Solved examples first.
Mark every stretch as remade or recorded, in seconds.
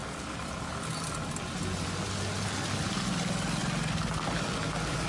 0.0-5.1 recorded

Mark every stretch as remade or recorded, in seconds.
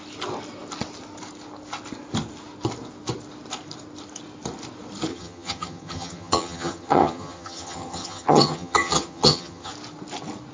0.0-5.1 recorded; 5.1-9.7 remade; 9.7-10.5 recorded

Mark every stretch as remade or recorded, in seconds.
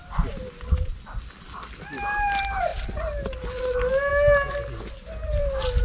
0.0-5.8 recorded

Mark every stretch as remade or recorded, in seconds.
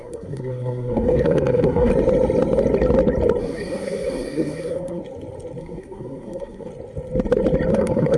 0.0-1.9 remade; 1.9-3.4 recorded; 3.4-5.0 remade; 5.0-5.6 recorded; 5.6-6.7 remade; 6.7-7.7 recorded; 7.7-8.2 remade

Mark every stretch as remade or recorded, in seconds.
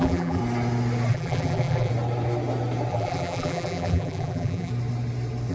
0.0-0.4 remade; 0.4-1.1 recorded; 1.1-1.9 remade; 1.9-2.9 recorded; 2.9-4.7 remade; 4.7-5.5 recorded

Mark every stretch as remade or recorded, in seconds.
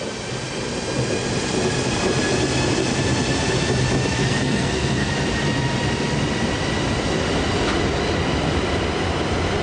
0.0-4.2 recorded; 4.2-5.1 remade; 5.1-9.6 recorded